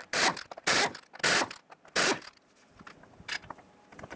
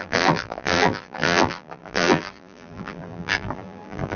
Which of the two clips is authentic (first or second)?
first